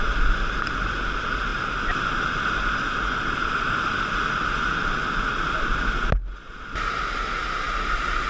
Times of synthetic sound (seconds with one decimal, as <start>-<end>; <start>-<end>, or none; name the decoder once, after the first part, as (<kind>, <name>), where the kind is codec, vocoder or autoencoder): none